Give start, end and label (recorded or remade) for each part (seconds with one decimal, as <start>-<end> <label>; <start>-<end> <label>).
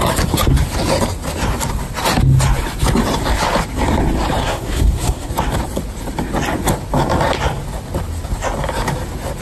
0.0-4.4 recorded; 4.4-5.3 remade; 5.3-9.4 recorded